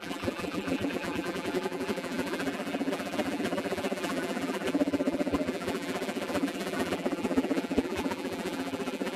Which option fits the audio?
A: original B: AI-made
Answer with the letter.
B